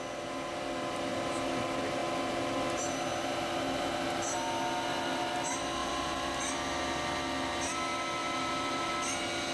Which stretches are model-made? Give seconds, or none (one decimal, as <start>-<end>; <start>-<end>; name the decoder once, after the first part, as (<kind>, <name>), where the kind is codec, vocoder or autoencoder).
5.8-6.4 (vocoder, BigVGAN v2); 8.2-8.9